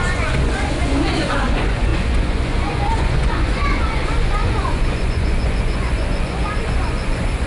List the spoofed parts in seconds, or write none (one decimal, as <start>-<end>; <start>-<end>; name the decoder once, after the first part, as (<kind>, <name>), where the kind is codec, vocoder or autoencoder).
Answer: 0.0-7.5 (vocoder, Vocos)